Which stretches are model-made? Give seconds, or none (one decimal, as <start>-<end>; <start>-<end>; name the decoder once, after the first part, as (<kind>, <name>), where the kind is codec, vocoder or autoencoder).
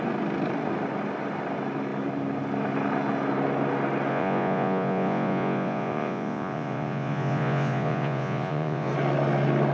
4.1-8.9 (vocoder, Vocos)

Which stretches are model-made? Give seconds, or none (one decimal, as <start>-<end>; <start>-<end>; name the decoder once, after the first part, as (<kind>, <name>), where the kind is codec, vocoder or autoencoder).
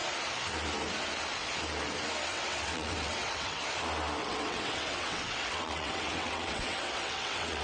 2.3-3.6 (vocoder, WaveNeXt); 4.2-7.6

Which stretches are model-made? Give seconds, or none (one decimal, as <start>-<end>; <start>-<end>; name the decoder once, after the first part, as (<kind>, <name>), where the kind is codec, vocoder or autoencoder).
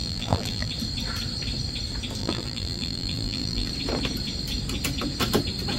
0.0-0.7 (vocoder, BigVGAN v2); 2.2-3.7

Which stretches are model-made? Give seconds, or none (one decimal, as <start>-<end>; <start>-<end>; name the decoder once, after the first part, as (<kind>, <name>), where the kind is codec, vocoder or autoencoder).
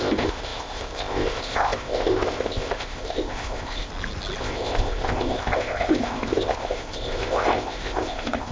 0.0-3.9 (codec, ZipCodec); 4.4-8.5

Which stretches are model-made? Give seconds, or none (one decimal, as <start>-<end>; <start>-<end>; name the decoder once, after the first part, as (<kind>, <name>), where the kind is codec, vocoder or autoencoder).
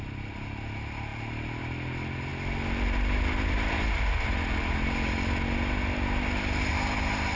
none